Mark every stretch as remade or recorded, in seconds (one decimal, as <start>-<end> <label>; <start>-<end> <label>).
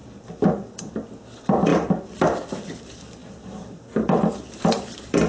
0.0-5.3 recorded